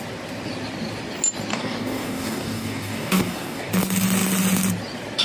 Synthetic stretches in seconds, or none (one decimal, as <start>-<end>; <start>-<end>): 1.5-3.7